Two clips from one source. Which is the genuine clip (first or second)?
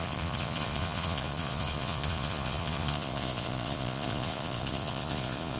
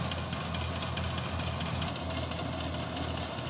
second